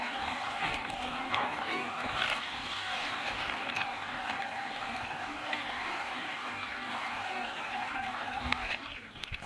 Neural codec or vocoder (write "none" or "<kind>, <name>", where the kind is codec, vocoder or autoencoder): codec, DAC